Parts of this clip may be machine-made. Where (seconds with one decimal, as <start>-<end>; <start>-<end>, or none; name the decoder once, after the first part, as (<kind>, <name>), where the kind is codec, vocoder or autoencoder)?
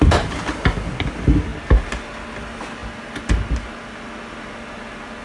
none